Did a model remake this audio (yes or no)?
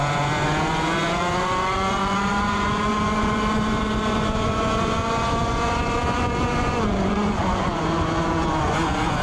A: yes